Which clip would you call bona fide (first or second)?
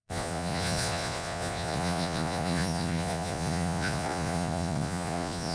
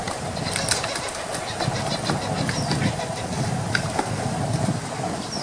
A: second